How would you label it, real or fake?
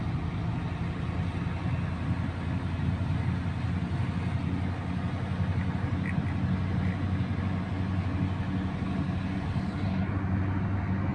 real